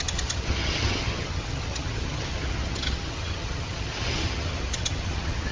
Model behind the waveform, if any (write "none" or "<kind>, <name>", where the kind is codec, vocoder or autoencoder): vocoder, HiFi-GAN